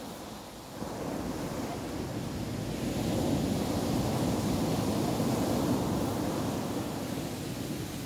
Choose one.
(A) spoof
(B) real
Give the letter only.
B